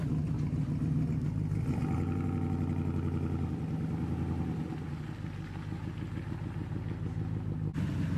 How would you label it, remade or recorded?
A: recorded